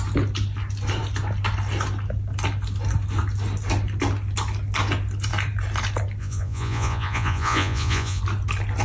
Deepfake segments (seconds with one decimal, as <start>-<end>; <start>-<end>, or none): 6.2-8.2